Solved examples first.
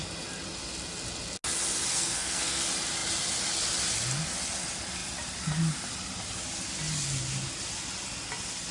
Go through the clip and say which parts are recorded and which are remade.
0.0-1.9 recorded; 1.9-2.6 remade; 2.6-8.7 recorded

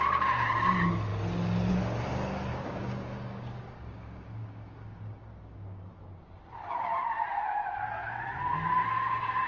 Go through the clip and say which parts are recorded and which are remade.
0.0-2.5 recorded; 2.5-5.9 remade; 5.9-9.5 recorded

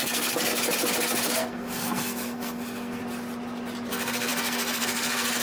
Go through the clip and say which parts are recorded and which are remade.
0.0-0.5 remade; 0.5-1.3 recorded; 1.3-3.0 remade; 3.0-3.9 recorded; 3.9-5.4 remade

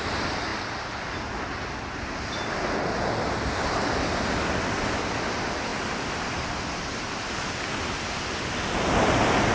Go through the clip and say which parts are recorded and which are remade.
0.0-9.5 recorded